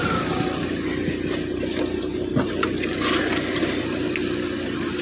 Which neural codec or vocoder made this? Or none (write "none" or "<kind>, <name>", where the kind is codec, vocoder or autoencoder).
none